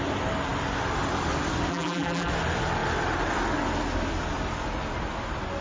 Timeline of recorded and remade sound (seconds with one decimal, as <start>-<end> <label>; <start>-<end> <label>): 0.0-1.7 recorded; 1.7-2.3 remade; 2.3-5.6 recorded